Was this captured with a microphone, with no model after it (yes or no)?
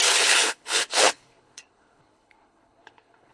no